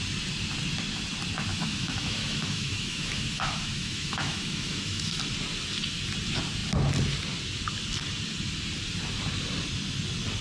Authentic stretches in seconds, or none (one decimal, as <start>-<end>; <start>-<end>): 0.0-1.5; 5.2-10.4